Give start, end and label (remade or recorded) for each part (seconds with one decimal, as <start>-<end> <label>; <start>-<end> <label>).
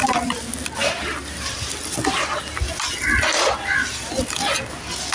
0.0-5.1 recorded